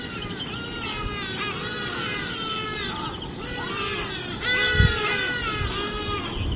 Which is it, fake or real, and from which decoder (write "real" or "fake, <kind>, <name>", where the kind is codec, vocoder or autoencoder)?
real